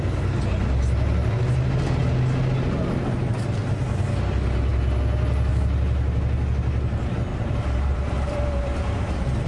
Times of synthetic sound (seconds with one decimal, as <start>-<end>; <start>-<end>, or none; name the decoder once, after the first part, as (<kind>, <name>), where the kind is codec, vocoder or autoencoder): 7.3-9.1 (vocoder, BigVGAN v2)